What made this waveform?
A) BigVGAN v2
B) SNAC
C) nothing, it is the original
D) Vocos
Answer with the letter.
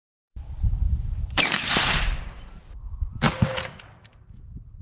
A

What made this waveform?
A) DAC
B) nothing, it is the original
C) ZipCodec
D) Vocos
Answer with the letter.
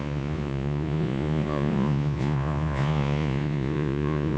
D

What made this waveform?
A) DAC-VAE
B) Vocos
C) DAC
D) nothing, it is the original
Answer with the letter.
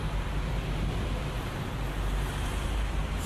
D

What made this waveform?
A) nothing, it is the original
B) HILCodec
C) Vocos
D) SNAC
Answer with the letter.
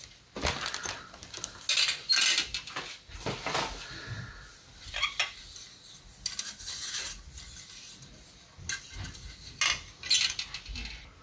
A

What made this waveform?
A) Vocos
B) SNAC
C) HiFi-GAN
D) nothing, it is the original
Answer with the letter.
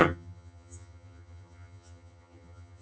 C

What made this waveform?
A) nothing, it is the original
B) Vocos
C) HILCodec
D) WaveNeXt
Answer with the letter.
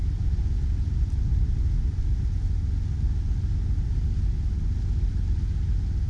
A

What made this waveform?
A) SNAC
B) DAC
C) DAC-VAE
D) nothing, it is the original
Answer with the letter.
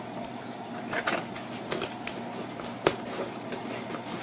D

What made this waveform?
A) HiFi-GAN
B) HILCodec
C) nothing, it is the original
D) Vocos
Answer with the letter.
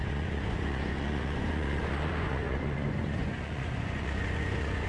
D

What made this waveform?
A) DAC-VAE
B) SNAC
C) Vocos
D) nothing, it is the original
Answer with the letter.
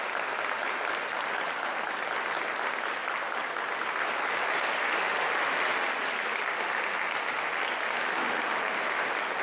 D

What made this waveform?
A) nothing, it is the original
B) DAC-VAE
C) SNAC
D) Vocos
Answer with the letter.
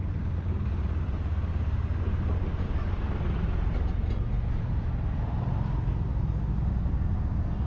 A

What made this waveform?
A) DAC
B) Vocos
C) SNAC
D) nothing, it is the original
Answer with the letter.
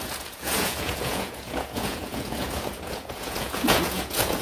B